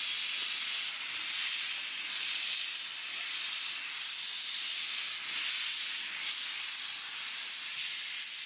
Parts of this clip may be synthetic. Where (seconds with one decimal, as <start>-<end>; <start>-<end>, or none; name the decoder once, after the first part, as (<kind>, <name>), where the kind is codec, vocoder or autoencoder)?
6.0-6.6 (codec, DAC)